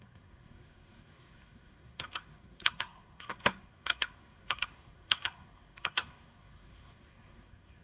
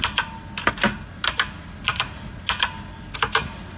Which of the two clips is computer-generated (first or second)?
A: first